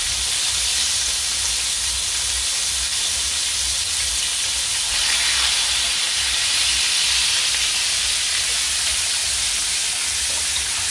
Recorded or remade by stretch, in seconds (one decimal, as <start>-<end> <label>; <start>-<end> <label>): 0.0-10.9 recorded